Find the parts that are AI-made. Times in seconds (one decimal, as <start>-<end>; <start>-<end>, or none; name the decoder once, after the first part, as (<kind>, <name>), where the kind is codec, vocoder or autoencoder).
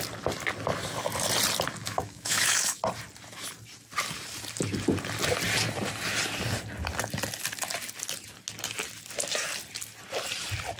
1.8-2.8 (autoencoder, DAC-VAE)